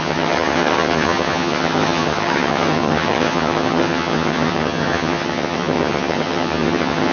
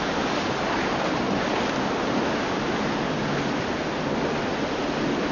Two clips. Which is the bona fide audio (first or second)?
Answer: second